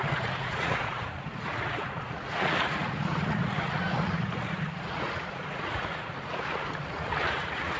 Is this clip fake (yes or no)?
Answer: yes